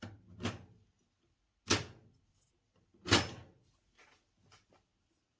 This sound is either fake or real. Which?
real